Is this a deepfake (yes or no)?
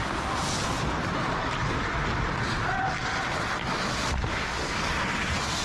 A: no